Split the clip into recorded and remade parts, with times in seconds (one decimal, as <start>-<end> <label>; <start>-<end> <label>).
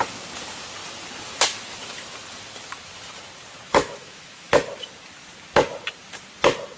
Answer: 0.0-3.7 recorded; 3.7-4.5 remade; 4.5-6.8 recorded